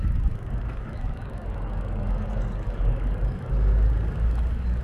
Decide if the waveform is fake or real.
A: fake